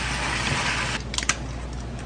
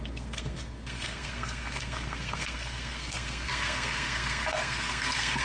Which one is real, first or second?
first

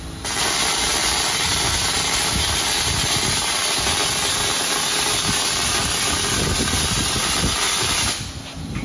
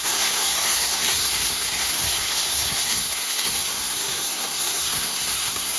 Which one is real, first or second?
first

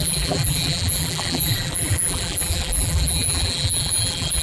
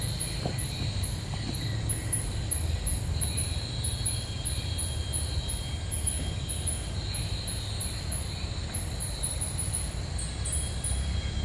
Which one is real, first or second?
second